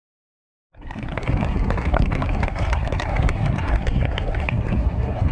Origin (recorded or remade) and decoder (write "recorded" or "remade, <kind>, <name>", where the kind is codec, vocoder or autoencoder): remade, codec, SNAC